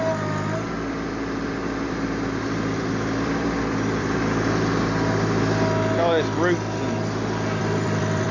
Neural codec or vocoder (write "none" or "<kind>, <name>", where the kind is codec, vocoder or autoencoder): vocoder, BigVGAN v2